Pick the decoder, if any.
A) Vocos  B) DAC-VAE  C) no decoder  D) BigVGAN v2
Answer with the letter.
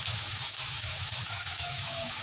B